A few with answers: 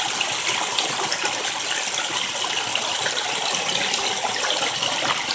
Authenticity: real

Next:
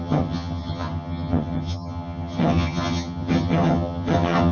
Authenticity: fake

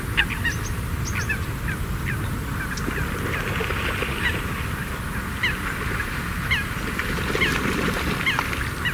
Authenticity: real